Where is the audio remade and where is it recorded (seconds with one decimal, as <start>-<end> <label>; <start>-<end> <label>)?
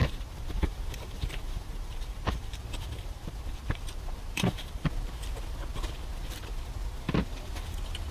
0.0-4.9 remade; 4.9-8.1 recorded